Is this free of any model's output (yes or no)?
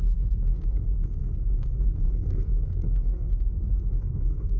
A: no